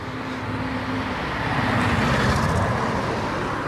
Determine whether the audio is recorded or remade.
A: recorded